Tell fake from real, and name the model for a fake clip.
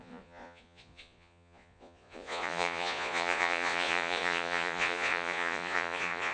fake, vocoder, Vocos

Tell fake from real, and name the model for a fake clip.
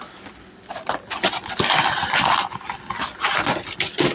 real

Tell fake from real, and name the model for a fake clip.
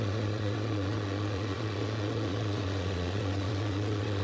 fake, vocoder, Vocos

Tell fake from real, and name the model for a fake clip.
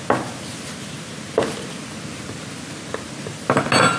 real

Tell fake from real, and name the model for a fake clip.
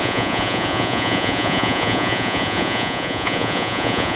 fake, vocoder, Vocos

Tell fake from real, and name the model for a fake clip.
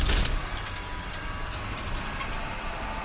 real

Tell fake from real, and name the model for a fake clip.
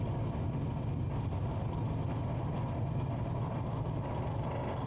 real